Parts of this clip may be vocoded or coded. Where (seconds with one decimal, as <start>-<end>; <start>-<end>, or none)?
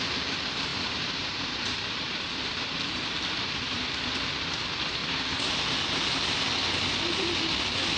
0.7-4.1; 5.0-6.4